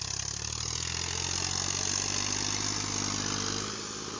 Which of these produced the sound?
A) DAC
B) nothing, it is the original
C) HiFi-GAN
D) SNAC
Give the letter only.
B